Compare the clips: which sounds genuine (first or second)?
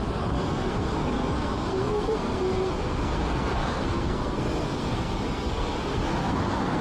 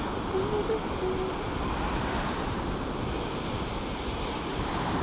second